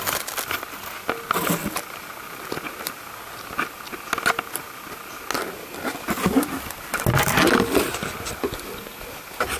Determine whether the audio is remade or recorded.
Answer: recorded